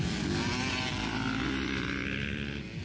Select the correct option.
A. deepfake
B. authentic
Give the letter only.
B